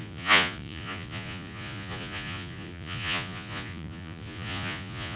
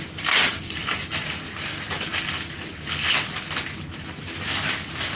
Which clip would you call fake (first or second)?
first